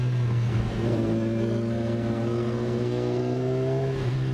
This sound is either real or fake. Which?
fake